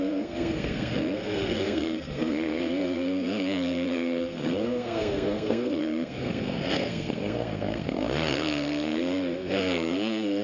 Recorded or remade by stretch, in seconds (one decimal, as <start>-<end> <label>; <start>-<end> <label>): 0.0-10.4 remade